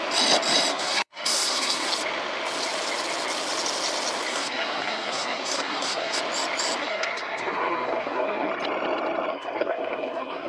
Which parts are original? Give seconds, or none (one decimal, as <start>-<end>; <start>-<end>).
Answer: 0.0-0.7; 1.9-4.3; 6.2-6.8; 8.5-9.3